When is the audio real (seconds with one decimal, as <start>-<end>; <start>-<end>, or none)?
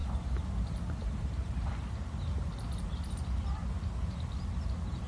0.0-5.1